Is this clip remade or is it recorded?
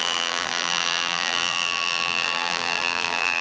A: remade